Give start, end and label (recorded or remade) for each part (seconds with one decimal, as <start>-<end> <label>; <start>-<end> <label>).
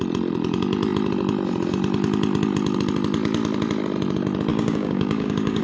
0.0-4.5 recorded; 4.5-5.6 remade